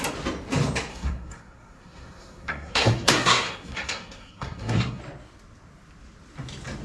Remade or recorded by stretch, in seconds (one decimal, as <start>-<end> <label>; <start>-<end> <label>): 0.0-0.9 recorded; 0.9-5.0 remade; 5.0-6.8 recorded